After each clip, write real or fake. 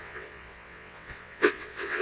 fake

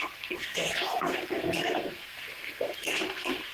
fake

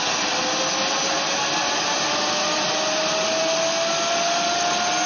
real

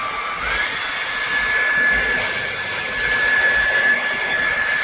real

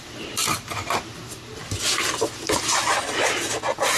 real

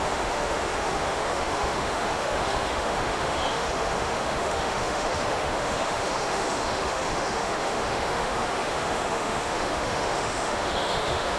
fake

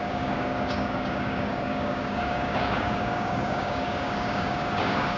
fake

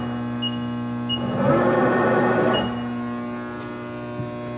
real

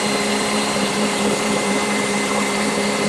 fake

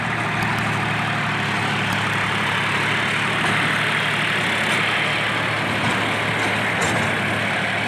real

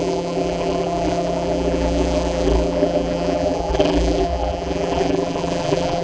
fake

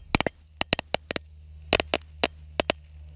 real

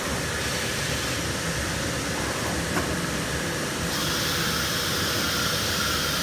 fake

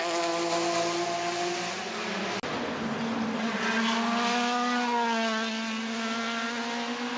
real